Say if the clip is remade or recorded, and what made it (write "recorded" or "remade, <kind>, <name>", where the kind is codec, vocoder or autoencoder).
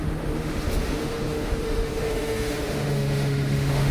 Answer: remade, autoencoder, DAC-VAE